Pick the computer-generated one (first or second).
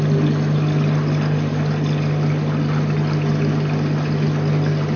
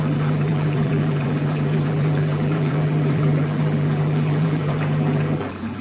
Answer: second